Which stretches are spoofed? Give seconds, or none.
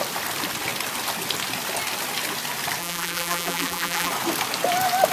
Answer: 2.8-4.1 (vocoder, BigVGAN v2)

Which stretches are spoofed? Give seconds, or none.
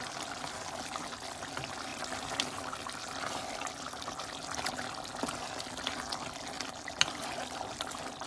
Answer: 0.0-1.9 (vocoder, BigVGAN v2); 3.2-5.9; 6.9-8.3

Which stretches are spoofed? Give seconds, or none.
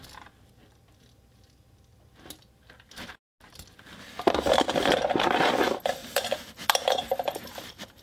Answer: 6.0-8.0 (vocoder, BigVGAN v2)